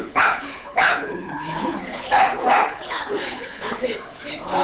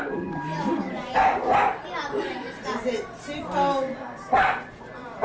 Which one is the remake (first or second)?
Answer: first